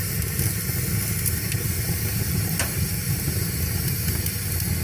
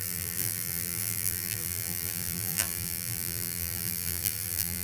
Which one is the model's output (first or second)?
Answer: second